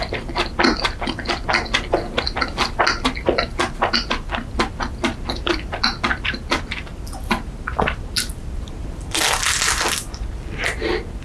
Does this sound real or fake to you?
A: real